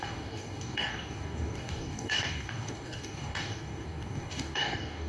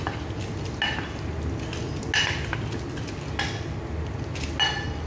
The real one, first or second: second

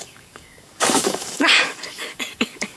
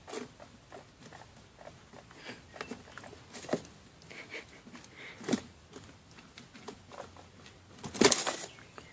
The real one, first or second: second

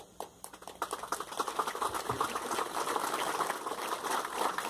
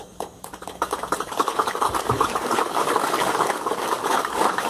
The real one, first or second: first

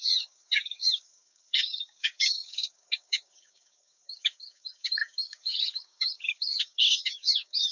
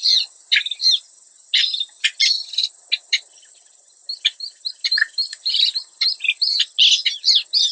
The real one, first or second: second